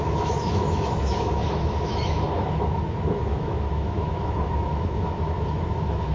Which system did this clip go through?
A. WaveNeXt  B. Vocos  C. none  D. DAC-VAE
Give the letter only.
D